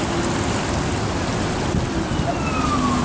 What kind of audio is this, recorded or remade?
recorded